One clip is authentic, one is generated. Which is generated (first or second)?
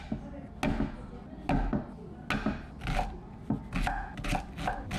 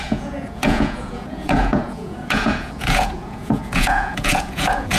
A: second